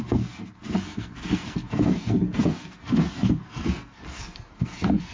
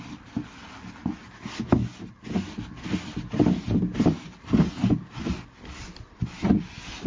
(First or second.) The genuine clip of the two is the second